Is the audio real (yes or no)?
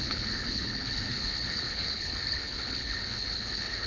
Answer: no